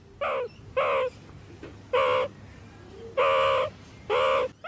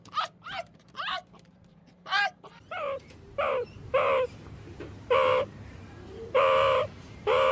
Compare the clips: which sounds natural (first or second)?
first